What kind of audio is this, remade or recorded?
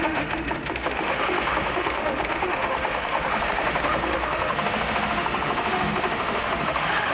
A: remade